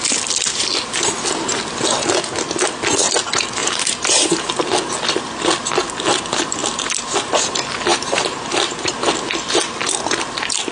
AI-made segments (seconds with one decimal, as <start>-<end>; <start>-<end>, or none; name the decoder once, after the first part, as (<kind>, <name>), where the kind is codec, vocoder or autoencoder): 3.6-4.4 (vocoder, BigVGAN v2); 7.9-8.9

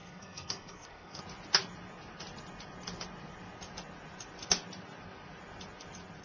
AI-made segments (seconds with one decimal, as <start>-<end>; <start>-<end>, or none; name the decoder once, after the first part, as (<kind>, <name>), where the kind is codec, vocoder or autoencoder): 0.0-1.2 (codec, SNAC)